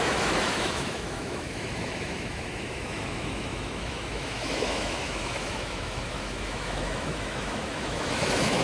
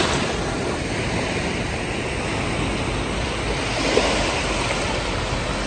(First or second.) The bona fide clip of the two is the second